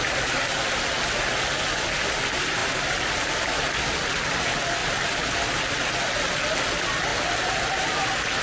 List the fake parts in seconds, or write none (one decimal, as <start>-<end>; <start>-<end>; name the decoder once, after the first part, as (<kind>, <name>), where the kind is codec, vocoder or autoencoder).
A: none